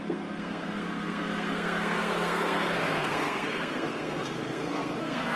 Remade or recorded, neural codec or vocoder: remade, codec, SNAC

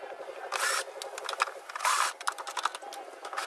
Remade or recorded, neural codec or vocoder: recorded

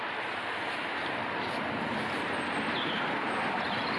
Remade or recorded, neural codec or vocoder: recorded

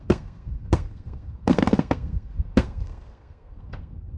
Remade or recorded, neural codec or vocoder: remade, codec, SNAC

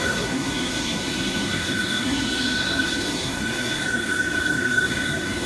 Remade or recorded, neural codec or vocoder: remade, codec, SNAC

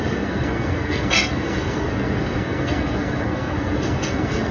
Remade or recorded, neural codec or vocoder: remade, codec, SNAC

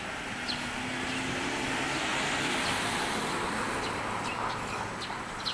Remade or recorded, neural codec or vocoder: recorded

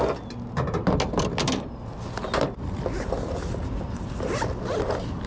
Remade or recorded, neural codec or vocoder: recorded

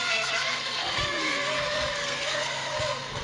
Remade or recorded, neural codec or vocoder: remade, codec, SNAC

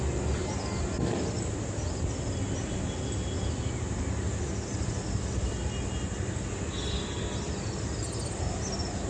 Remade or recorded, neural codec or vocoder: recorded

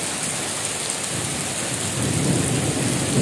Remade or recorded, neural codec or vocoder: recorded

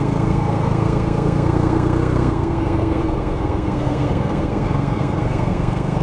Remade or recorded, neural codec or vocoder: remade, codec, SNAC